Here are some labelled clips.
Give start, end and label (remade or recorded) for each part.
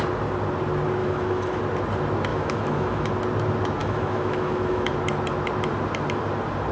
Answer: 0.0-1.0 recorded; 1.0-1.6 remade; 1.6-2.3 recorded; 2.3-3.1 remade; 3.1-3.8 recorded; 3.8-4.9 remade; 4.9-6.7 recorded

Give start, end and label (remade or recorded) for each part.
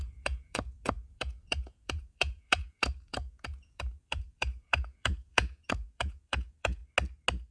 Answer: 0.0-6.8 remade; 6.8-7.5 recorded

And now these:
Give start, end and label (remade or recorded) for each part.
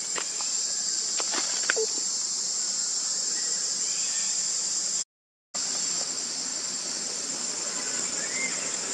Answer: 0.0-8.9 recorded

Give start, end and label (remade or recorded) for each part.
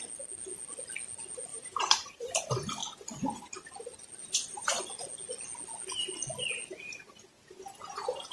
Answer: 0.0-1.5 recorded; 1.5-2.4 remade; 2.4-2.8 recorded; 2.8-3.4 remade; 3.4-4.2 recorded; 4.2-4.8 remade; 4.8-8.3 recorded